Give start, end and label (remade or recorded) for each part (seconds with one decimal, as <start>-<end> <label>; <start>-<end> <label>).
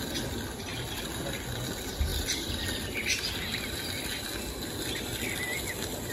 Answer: 0.0-6.1 recorded